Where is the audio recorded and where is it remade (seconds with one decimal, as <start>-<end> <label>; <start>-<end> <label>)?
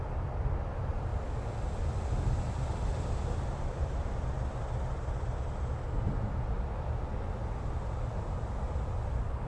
0.0-9.5 recorded